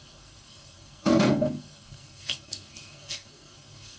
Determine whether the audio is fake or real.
fake